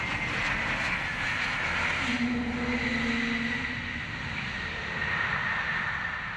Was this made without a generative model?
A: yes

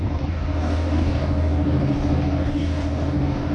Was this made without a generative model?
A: no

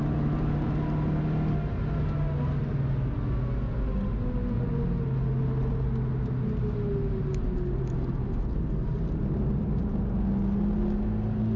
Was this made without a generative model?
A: yes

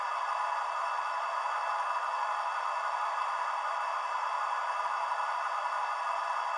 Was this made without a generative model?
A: yes